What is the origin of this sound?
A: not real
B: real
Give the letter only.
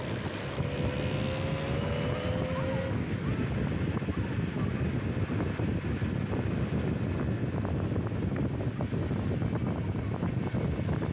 B